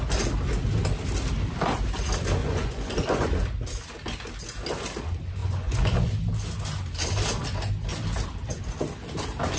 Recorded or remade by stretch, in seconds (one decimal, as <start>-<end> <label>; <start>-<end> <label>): 0.0-2.4 recorded; 2.4-3.3 remade; 3.3-5.4 recorded; 5.4-6.1 remade; 6.1-9.6 recorded